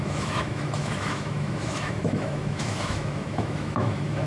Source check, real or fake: fake